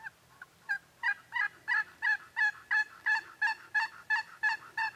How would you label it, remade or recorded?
recorded